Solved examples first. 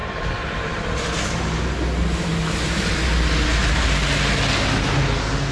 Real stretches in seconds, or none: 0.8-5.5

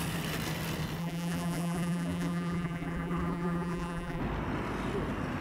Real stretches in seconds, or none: 0.0-1.0; 4.2-5.4

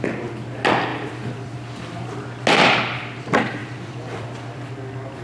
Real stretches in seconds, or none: 0.0-0.9; 2.0-3.6; 4.7-5.2